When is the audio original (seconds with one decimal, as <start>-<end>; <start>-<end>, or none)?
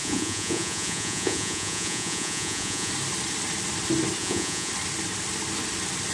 2.9-4.2; 4.7-6.1